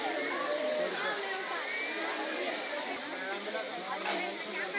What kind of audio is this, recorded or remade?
recorded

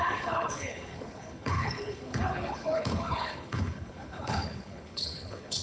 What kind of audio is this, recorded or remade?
remade